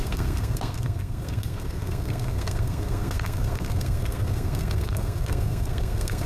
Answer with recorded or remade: remade